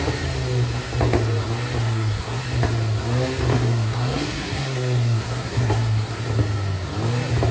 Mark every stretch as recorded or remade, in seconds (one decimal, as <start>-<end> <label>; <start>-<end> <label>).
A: 0.0-1.8 recorded; 1.8-2.4 remade; 2.4-3.5 recorded; 3.5-6.2 remade; 6.2-7.5 recorded